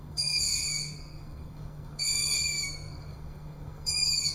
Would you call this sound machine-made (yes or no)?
yes